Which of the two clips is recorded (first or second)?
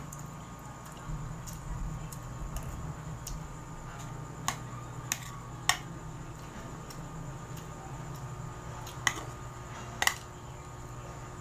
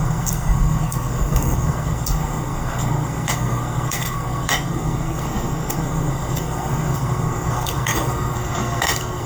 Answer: first